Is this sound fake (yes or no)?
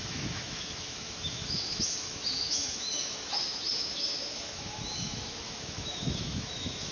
yes